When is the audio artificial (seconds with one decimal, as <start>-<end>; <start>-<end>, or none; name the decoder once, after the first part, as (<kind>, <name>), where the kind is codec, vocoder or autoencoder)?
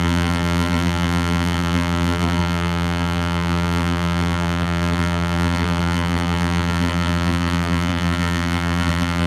0.0-9.3 (vocoder, BigVGAN v2)